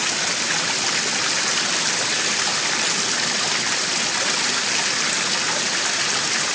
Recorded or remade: recorded